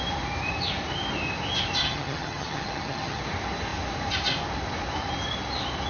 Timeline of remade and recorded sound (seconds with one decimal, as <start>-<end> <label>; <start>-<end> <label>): 0.0-1.8 recorded; 1.8-3.2 remade; 3.2-5.9 recorded